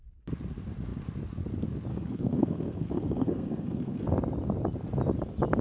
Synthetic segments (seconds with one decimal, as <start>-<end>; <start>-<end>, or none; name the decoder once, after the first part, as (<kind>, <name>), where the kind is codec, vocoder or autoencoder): 1.9-4.0 (codec, SNAC)